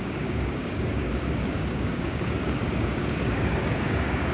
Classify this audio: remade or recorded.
remade